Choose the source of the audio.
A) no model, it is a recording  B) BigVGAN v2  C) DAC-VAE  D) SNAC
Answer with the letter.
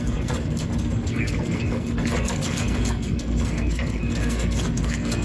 D